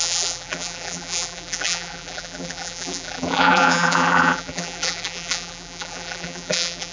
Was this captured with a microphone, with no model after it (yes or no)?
no